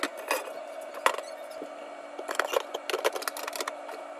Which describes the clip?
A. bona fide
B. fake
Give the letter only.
A